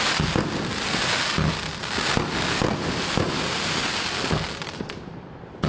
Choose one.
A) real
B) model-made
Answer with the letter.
A